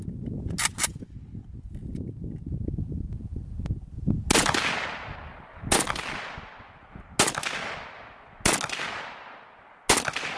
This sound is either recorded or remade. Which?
recorded